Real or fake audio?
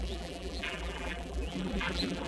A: fake